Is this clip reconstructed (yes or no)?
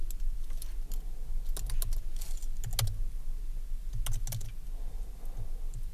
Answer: no